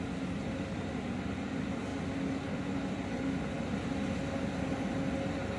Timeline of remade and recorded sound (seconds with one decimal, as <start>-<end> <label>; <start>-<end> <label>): 0.0-5.6 recorded

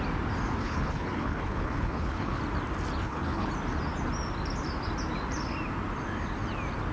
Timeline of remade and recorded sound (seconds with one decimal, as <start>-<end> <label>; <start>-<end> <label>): 0.0-0.6 recorded; 0.6-2.4 remade; 2.4-3.0 recorded; 3.0-3.5 remade; 3.5-6.9 recorded